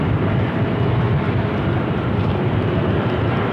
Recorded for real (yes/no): yes